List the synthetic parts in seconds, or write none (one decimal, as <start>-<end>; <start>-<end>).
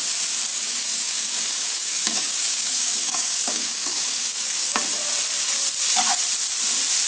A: 0.5-4.8